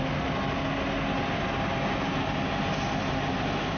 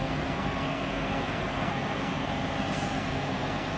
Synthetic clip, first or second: second